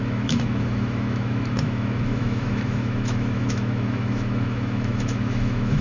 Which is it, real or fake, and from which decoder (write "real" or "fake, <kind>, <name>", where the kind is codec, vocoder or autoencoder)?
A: fake, autoencoder, DAC-VAE